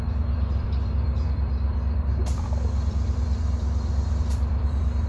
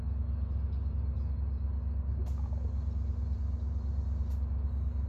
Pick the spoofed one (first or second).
first